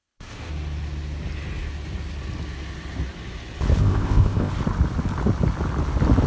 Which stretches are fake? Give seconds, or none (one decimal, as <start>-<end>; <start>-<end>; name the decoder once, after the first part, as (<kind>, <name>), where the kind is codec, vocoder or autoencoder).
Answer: 0.0-0.5 (codec, ZipCodec); 3.8-4.5